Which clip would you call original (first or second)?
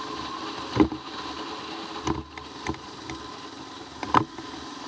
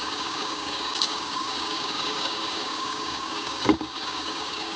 first